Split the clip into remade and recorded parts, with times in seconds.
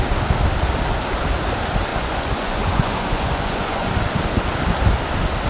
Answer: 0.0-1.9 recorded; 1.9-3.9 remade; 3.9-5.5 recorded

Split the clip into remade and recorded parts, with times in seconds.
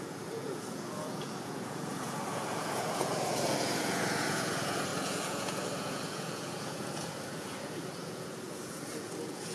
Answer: 0.0-9.5 remade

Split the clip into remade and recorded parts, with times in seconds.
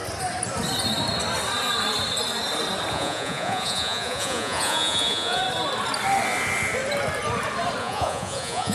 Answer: 0.0-2.9 recorded; 2.9-5.4 remade; 5.4-7.8 recorded; 7.8-8.7 remade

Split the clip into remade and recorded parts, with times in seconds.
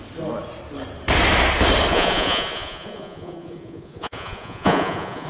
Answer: 0.0-1.9 recorded; 1.9-5.3 remade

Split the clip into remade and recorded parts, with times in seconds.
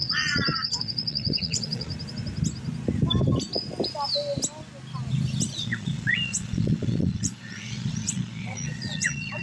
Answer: 0.0-1.9 remade; 1.9-5.5 recorded; 5.5-9.4 remade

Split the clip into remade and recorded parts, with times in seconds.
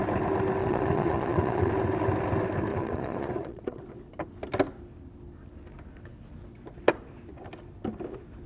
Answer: 0.0-0.6 recorded; 0.6-1.7 remade; 1.7-2.7 recorded; 2.7-3.8 remade; 3.8-8.5 recorded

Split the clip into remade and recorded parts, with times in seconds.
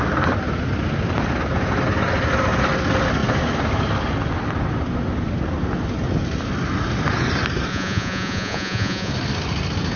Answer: 0.0-7.7 recorded; 7.7-9.1 remade; 9.1-10.0 recorded